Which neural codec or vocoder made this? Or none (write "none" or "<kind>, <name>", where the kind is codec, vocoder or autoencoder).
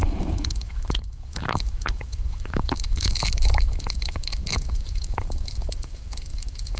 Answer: autoencoder, DAC-VAE